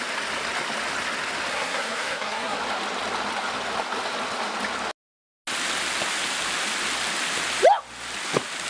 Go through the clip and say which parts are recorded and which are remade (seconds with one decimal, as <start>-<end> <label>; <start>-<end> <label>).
0.0-1.5 recorded; 1.5-2.6 remade; 2.6-8.7 recorded